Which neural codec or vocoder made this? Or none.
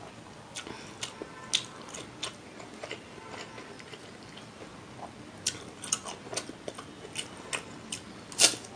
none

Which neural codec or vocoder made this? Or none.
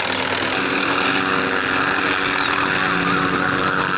none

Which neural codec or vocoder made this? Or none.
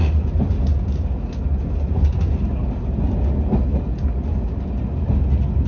none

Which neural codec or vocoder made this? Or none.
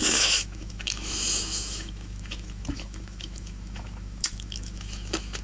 autoencoder, DAC-VAE